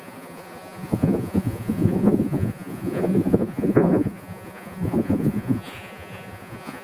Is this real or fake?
fake